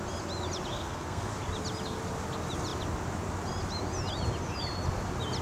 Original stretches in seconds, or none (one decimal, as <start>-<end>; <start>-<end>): 0.0-0.7; 1.3-5.4